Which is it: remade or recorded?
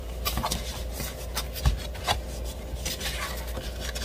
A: recorded